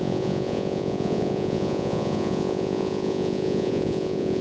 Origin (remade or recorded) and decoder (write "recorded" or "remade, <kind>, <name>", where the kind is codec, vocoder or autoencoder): remade, vocoder, Vocos